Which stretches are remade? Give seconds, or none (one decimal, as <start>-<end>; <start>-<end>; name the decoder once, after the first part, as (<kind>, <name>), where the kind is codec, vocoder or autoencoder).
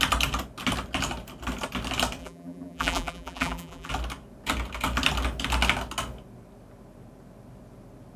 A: 2.2-3.9 (vocoder, BigVGAN v2)